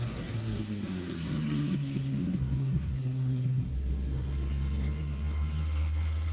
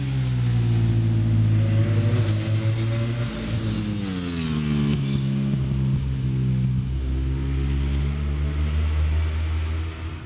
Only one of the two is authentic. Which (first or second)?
second